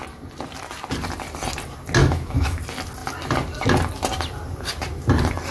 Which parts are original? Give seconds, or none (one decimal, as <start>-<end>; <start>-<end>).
0.0-2.0; 2.6-5.5